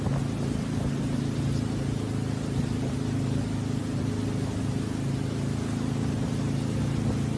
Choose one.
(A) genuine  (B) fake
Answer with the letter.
A